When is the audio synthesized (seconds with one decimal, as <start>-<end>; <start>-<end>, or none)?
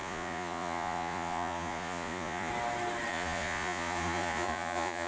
0.0-2.5; 3.1-5.1